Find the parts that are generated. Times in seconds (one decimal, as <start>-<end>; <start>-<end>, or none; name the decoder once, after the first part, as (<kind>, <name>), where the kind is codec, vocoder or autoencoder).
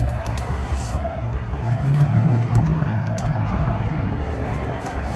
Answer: 0.0-5.2 (codec, SNAC)